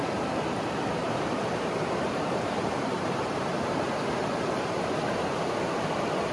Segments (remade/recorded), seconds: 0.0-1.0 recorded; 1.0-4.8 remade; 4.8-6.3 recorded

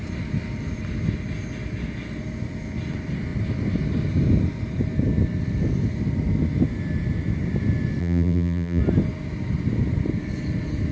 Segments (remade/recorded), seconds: 0.0-8.0 recorded; 8.0-8.8 remade; 8.8-10.9 recorded

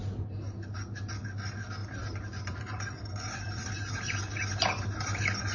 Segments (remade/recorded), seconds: 0.0-1.8 recorded; 1.8-4.2 remade; 4.2-5.5 recorded

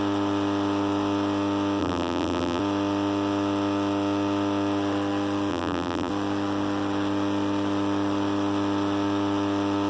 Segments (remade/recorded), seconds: 0.0-1.8 recorded; 1.8-2.6 remade; 2.6-5.5 recorded; 5.5-6.1 remade; 6.1-9.9 recorded

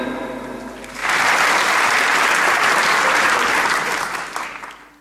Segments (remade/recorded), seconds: 0.0-1.0 recorded; 1.0-4.0 remade; 4.0-5.0 recorded

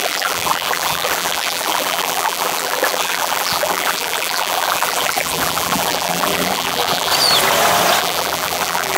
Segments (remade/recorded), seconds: 0.0-7.1 remade; 7.1-8.0 recorded; 8.0-9.0 remade